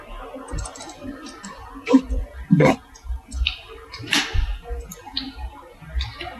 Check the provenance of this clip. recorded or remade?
remade